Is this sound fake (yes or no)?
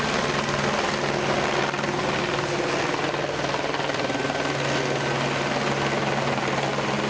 no